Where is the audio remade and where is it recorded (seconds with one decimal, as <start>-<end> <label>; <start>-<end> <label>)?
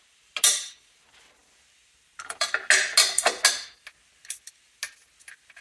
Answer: 0.0-1.4 recorded; 1.4-2.6 remade; 2.6-5.6 recorded